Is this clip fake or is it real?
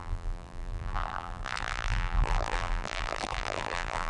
fake